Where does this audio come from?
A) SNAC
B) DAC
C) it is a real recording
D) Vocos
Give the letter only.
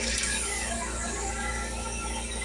B